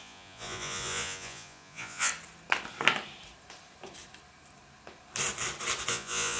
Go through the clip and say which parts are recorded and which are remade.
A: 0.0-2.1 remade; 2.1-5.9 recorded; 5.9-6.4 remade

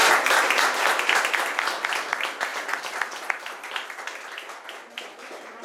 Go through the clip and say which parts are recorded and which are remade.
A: 0.0-1.3 remade; 1.3-5.6 recorded